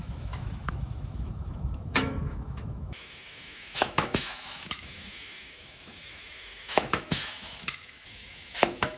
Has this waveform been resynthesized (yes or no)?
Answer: yes